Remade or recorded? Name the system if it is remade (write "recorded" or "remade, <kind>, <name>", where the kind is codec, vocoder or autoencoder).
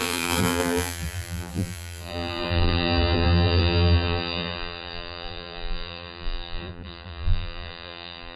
remade, vocoder, BigVGAN v2